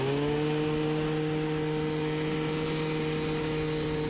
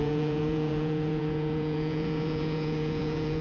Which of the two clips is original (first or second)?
first